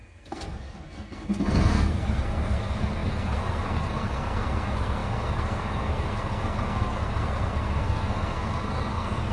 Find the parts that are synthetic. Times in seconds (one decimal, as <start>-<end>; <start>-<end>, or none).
0.0-9.3